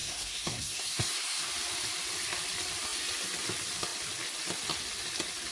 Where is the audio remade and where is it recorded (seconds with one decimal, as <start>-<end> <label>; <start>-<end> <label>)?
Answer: 0.0-1.5 remade; 1.5-5.5 recorded